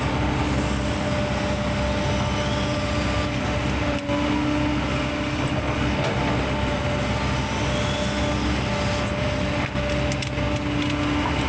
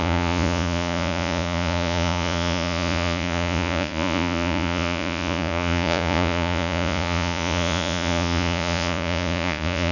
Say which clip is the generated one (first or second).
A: second